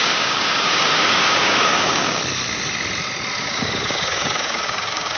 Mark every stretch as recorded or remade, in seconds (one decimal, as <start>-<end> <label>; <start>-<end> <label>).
0.0-2.2 remade; 2.2-3.4 recorded; 3.4-5.2 remade